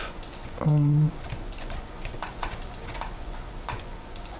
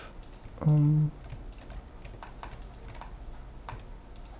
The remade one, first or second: first